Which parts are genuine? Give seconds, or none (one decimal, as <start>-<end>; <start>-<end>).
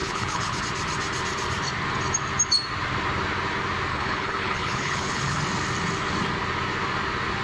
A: 0.6-3.9; 5.4-7.4